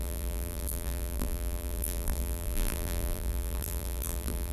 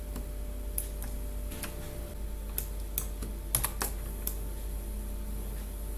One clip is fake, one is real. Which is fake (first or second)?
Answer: first